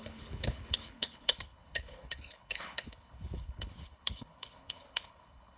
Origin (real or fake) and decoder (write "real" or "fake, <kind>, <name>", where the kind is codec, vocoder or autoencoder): fake, codec, HILCodec